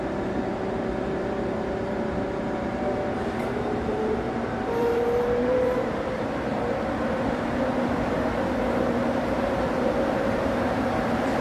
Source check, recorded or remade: remade